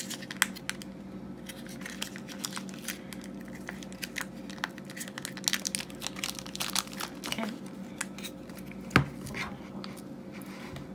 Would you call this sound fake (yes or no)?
no